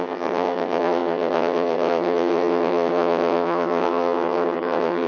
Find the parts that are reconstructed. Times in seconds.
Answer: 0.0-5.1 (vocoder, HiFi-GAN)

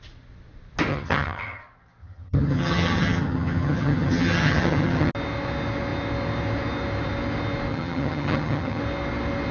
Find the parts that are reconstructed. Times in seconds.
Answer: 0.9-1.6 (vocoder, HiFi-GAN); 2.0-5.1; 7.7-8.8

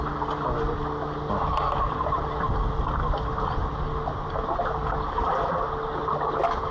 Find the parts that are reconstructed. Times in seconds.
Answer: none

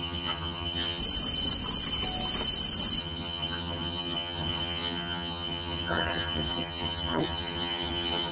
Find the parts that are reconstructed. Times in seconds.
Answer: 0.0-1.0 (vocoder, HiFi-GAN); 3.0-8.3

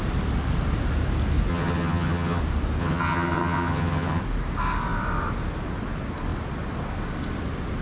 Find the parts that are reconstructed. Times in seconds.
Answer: 1.5-2.4 (vocoder, HiFi-GAN); 2.8-4.2

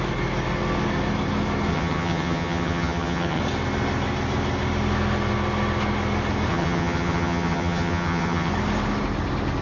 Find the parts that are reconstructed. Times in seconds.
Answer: 1.7-3.4 (vocoder, HiFi-GAN); 6.5-8.5

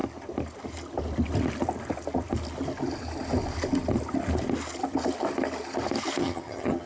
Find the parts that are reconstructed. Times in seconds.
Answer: 6.2-6.9 (vocoder, HiFi-GAN)